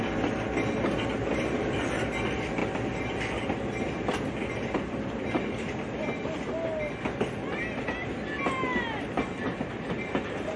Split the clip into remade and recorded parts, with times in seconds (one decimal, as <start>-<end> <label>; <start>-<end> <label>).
0.0-10.6 recorded